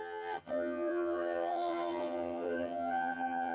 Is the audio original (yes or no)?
no